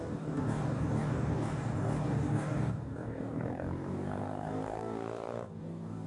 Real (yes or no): no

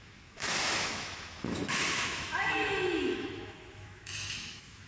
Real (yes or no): no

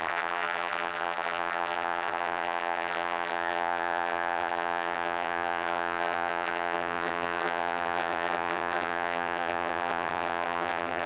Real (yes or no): no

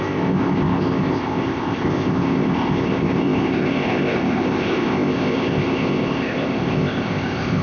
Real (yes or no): no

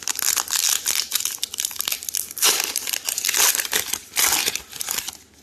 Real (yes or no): yes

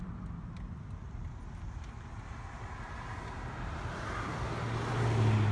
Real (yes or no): yes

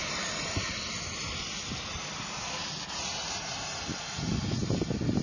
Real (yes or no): yes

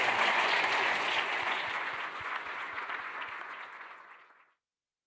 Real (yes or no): no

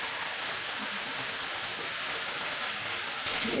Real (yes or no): yes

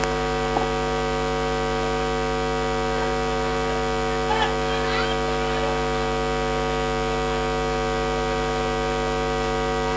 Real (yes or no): yes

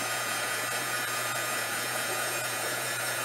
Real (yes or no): no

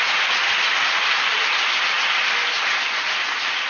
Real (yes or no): yes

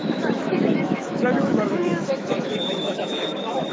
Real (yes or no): no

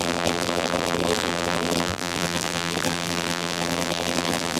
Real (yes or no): no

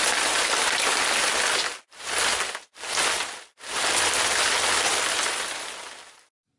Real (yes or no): yes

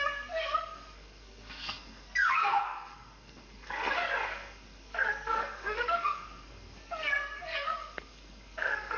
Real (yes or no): no